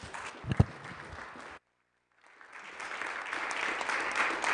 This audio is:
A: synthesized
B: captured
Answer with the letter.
B